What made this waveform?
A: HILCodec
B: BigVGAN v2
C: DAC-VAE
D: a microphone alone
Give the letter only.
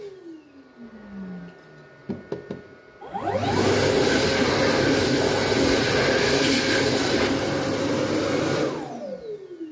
D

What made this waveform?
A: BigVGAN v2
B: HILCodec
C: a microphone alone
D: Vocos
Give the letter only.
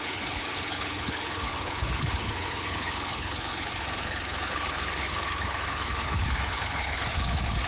B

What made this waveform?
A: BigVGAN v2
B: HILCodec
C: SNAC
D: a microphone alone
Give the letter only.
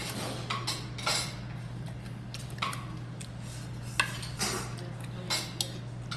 D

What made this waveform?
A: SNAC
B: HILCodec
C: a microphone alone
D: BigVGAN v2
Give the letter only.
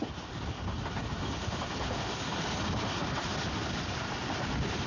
C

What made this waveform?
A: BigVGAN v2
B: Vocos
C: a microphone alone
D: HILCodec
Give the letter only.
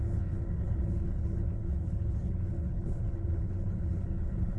D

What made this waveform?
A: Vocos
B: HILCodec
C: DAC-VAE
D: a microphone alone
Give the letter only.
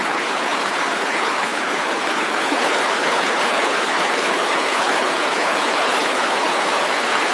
B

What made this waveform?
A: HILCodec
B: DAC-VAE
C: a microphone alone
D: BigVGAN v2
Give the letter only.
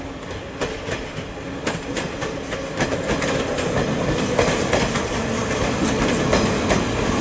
C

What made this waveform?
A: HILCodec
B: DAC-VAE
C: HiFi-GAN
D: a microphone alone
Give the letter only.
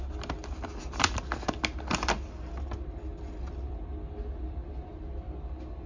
D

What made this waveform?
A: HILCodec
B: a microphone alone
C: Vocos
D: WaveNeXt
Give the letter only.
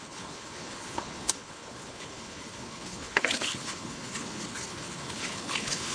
A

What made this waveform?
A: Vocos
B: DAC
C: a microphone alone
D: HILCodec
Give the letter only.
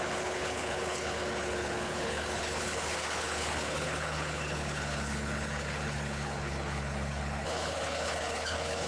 D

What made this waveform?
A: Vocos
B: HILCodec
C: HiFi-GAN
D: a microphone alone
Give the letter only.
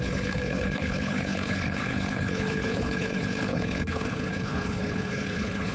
B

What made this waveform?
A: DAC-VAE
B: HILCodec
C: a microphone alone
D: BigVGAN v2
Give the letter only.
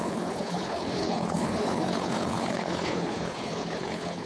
B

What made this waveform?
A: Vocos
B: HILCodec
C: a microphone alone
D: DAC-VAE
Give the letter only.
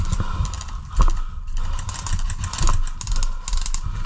C